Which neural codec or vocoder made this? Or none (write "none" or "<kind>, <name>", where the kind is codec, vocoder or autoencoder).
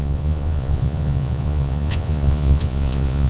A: vocoder, Vocos